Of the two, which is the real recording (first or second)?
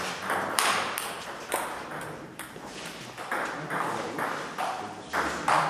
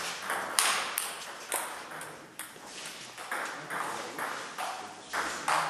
second